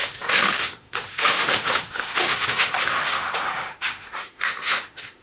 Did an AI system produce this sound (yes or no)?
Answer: yes